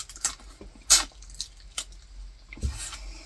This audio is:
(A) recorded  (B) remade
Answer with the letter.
A